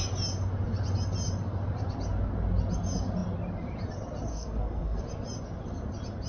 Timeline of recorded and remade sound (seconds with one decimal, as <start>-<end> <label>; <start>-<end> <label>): 0.0-4.3 recorded; 4.3-5.0 remade; 5.0-6.3 recorded